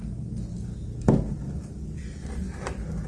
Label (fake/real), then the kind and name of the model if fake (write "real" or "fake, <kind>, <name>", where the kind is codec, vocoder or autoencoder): real